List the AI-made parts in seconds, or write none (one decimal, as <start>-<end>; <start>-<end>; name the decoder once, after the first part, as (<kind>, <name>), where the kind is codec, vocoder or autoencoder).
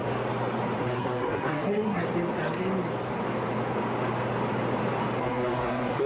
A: 0.8-2.0 (codec, SNAC); 5.2-6.1